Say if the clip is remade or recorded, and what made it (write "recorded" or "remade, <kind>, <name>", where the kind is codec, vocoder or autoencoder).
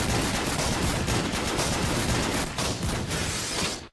recorded